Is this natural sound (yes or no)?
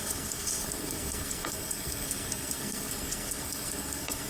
no